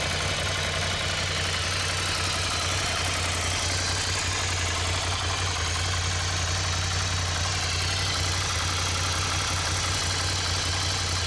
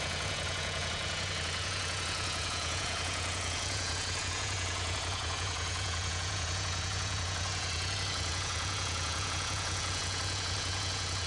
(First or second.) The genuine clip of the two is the first